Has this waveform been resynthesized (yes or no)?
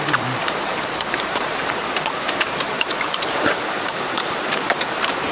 yes